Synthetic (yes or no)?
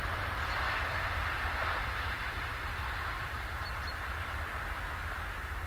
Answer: no